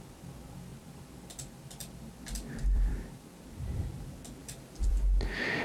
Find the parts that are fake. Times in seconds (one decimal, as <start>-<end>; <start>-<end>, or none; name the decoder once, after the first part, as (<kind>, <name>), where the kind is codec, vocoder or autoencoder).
0.7-4.0 (vocoder, BigVGAN v2); 4.4-5.0